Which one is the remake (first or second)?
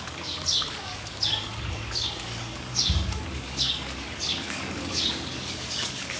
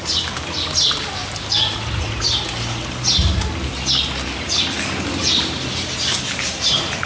first